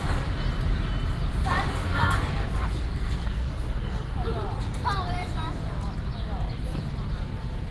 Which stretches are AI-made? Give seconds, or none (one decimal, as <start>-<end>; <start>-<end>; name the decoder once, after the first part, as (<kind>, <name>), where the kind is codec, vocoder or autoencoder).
1.8-4.1 (codec, SNAC)